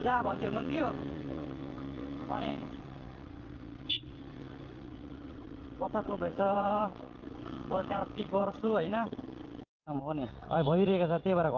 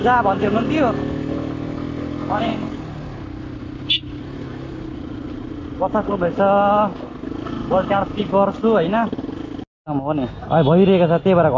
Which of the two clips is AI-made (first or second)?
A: first